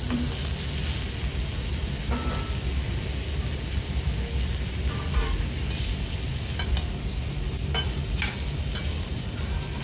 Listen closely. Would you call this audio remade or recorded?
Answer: recorded